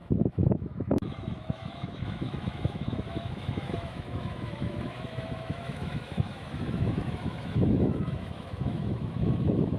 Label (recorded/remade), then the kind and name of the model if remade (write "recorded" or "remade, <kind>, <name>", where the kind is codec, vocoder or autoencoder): remade, autoencoder, DAC-VAE